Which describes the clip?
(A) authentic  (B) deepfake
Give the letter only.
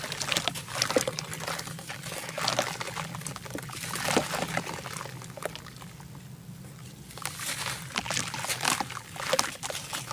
A